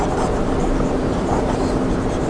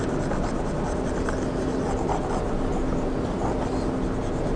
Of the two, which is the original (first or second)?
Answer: second